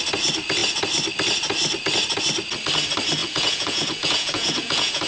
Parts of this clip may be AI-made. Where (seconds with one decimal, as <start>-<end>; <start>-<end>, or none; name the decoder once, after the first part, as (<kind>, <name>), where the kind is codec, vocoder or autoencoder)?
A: 3.2-5.1 (vocoder, Vocos)